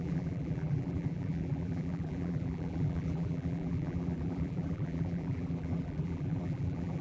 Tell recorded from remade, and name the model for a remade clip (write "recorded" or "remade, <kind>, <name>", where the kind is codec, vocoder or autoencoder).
remade, vocoder, BigVGAN v2